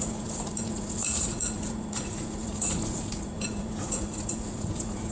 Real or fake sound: fake